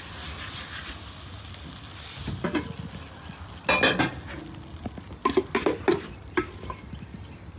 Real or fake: real